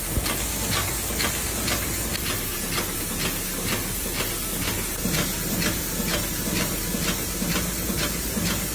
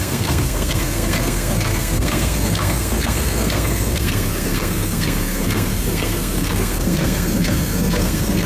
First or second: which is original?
first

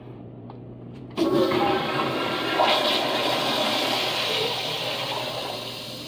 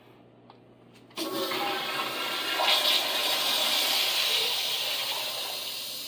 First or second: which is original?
second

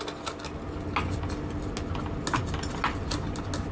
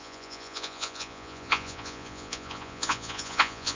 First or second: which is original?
first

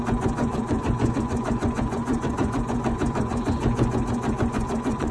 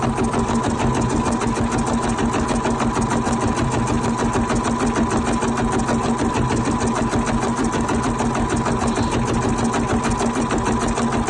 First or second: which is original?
second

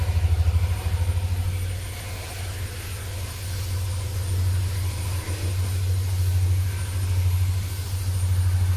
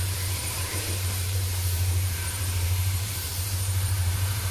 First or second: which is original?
first